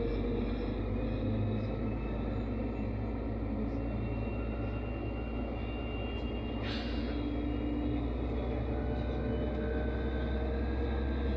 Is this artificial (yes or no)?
no